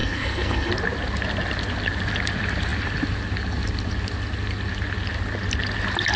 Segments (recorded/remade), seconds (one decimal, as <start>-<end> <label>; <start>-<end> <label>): 0.0-0.7 remade; 0.7-6.2 recorded